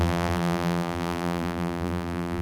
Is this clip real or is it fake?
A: fake